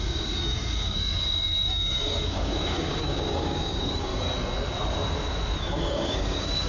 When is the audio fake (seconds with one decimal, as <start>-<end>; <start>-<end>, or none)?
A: 0.0-4.1; 5.6-6.7